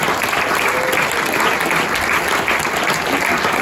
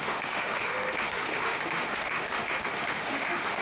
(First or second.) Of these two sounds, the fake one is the second